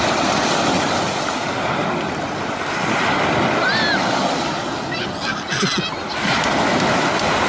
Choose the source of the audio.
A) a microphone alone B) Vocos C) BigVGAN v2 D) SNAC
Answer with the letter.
A